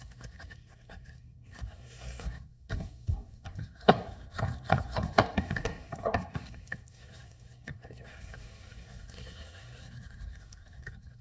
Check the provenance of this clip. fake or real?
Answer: fake